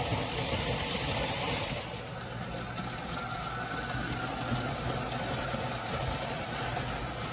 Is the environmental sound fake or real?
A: real